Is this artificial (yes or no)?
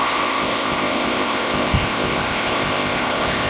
yes